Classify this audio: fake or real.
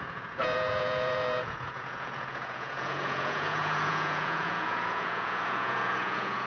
fake